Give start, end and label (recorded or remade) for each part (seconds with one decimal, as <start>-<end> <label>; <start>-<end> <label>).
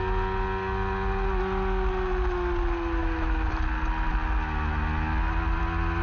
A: 0.0-3.0 recorded; 3.0-3.5 remade; 3.5-6.0 recorded